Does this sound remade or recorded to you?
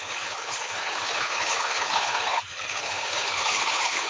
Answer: remade